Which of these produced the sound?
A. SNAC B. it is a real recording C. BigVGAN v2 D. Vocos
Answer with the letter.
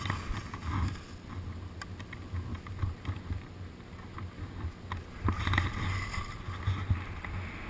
B